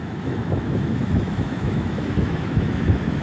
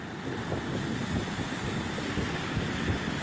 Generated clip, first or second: first